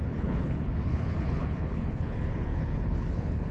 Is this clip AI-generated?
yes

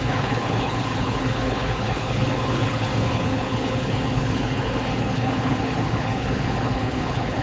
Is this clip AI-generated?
yes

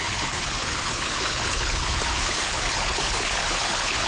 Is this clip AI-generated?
yes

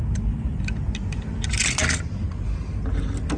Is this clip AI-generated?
no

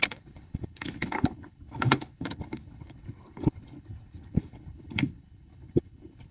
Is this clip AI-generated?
yes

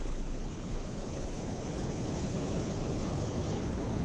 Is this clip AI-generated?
yes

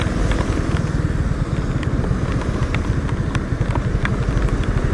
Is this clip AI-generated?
no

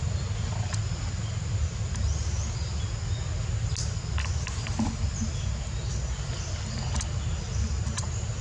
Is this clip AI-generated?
no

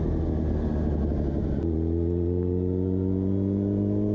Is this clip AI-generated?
no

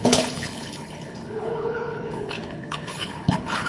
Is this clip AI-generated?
yes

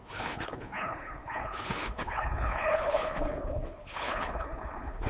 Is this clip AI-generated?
yes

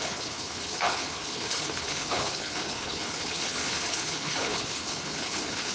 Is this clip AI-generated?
yes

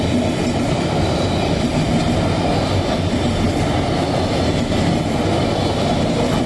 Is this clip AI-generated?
no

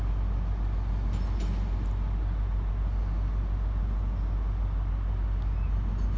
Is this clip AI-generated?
no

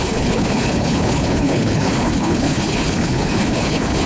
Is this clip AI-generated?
yes